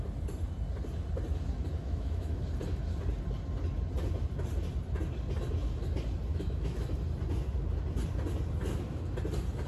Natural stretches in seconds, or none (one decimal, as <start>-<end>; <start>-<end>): 0.0-1.8; 2.4-6.3; 6.9-9.7